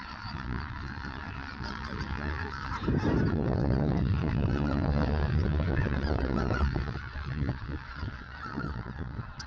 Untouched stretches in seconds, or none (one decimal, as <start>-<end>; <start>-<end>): 2.7-3.3

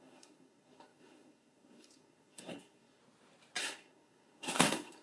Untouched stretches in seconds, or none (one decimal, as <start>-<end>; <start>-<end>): 3.0-3.6